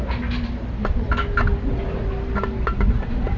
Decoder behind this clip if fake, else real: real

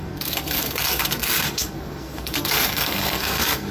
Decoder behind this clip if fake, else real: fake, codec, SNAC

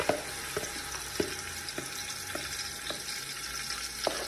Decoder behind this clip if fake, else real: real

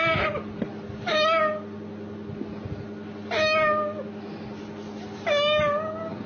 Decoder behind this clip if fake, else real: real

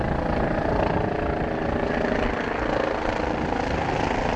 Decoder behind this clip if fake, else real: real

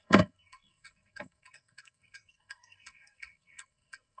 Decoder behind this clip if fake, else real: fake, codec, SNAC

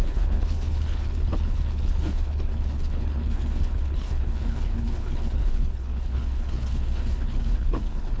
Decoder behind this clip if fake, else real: fake, codec, HILCodec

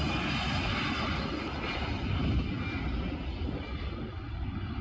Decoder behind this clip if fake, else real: real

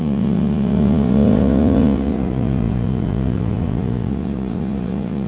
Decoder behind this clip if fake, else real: fake, vocoder, Vocos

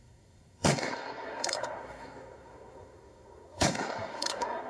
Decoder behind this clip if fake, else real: fake, codec, SNAC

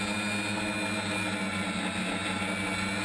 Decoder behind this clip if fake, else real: real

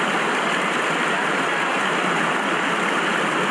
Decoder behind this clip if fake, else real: real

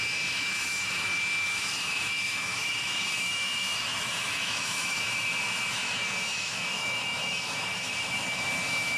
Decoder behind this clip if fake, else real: fake, autoencoder, DAC-VAE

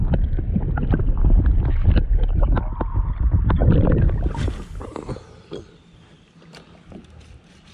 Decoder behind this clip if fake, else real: real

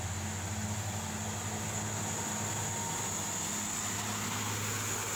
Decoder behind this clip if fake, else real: real